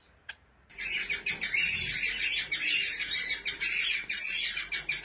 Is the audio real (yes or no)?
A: no